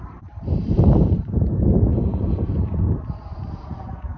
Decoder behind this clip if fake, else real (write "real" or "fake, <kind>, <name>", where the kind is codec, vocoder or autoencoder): fake, vocoder, BigVGAN v2